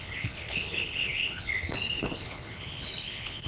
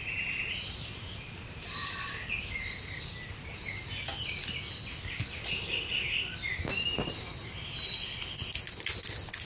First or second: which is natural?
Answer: second